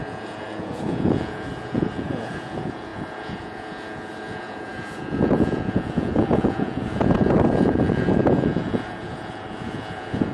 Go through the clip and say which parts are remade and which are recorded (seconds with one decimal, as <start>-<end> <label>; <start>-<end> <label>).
0.0-10.3 remade